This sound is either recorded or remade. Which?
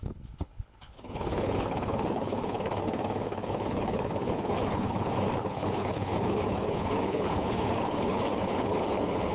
remade